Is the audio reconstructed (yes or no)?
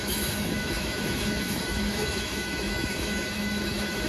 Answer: yes